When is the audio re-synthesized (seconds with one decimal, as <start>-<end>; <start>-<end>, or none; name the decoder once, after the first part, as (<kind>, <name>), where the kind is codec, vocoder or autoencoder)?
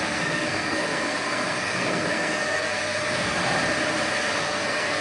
0.0-3.4 (codec, SNAC); 4.4-5.0